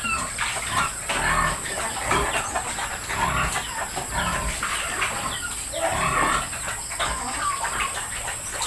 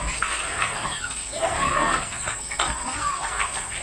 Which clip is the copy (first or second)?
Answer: second